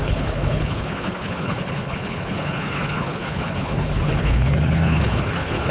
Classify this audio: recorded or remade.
remade